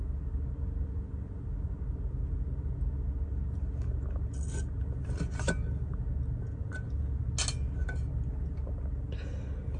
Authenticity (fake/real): real